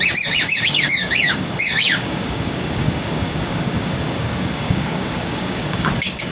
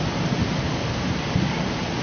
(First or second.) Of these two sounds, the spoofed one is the first